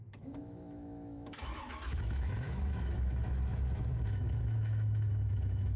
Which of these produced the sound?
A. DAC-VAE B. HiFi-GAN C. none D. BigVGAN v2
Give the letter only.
A